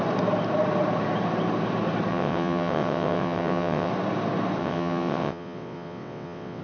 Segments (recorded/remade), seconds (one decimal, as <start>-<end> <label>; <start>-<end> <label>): 0.0-2.1 recorded; 2.1-3.9 remade; 3.9-4.6 recorded; 4.6-6.6 remade